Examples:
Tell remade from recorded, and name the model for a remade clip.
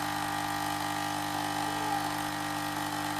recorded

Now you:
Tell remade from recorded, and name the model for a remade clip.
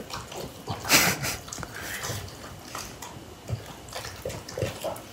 recorded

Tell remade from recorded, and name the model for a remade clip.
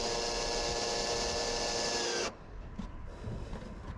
recorded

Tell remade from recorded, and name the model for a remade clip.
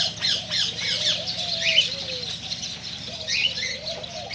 remade, vocoder, BigVGAN v2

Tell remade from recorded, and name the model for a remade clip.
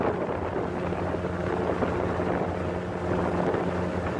recorded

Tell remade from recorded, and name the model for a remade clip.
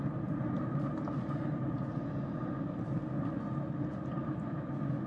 recorded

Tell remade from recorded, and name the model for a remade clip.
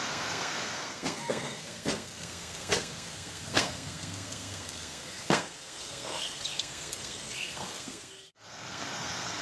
remade, codec, SNAC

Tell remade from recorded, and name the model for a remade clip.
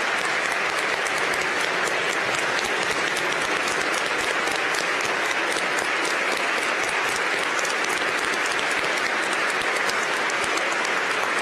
recorded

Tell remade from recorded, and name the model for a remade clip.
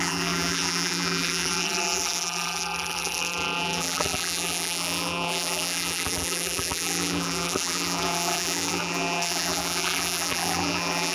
remade, vocoder, BigVGAN v2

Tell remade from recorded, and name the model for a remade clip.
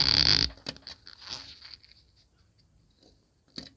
recorded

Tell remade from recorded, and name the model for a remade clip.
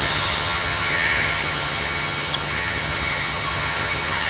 remade, vocoder, HiFi-GAN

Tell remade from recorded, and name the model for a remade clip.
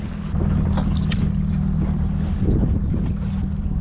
recorded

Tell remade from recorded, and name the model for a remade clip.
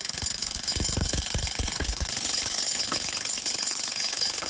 remade, codec, HILCodec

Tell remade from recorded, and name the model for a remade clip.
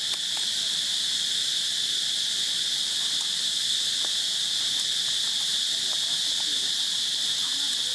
recorded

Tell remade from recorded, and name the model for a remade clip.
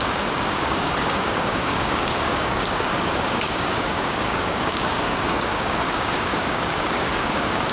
remade, codec, DAC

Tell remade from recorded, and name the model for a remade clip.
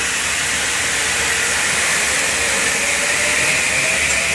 recorded